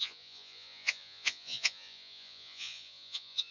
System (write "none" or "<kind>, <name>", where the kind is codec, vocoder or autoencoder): vocoder, Vocos